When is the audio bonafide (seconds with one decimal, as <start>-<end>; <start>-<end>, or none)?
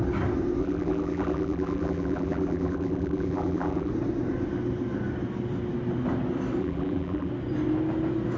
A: 0.0-0.6; 3.9-6.6; 7.3-8.4